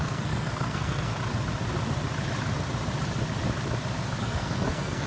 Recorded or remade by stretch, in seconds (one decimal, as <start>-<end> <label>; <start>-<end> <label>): 0.0-1.1 remade; 1.1-4.2 recorded; 4.2-5.1 remade